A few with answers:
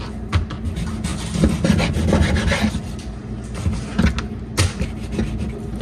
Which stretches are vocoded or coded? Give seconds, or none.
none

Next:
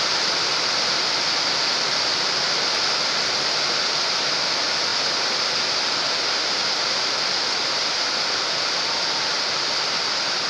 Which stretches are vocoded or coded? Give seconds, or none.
none

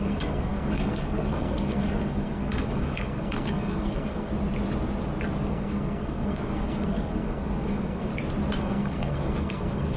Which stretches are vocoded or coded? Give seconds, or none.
0.0-4.3; 5.5-8.1; 8.6-10.0

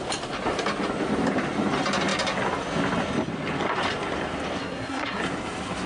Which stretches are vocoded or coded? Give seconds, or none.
4.6-5.2

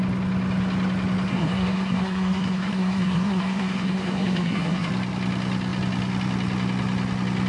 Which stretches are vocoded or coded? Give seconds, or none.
1.3-4.9

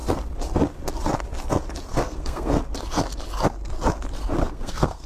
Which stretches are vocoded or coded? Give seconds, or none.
1.9-2.6; 4.4-5.1

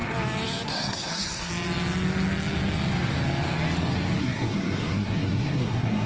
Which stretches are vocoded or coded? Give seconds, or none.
0.7-1.5; 4.2-6.1